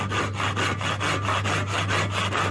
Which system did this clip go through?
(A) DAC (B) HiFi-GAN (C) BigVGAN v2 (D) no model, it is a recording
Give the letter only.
D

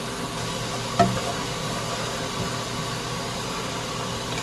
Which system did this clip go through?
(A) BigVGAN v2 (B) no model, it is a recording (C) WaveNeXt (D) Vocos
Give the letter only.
B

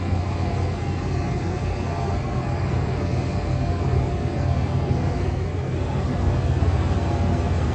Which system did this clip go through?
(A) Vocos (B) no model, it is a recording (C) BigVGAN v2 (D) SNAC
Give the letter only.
D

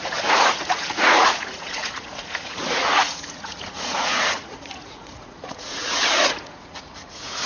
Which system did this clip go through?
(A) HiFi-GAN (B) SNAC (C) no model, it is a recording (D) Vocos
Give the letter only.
D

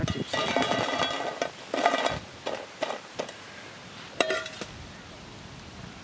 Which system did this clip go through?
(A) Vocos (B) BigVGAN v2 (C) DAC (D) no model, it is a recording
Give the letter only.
D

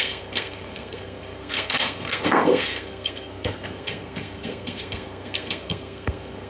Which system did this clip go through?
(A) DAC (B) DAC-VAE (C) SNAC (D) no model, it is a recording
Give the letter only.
C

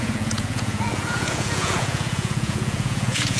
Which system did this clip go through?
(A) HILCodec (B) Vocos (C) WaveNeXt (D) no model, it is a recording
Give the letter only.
B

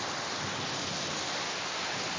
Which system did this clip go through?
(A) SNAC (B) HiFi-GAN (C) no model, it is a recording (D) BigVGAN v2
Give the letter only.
C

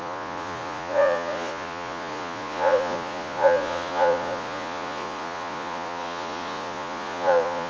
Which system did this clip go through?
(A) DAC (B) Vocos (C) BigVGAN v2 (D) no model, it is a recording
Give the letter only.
B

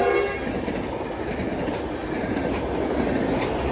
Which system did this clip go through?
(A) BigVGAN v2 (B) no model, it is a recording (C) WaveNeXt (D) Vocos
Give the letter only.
B